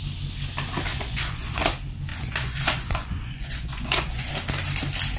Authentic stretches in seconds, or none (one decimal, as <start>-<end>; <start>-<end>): 0.0-0.9; 1.6-2.1; 4.3-5.2